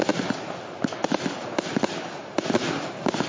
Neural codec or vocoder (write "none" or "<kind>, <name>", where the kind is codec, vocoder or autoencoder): none